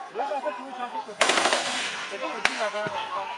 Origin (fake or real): fake